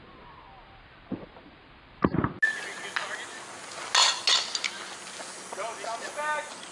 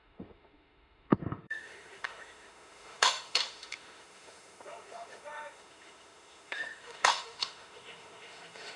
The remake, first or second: second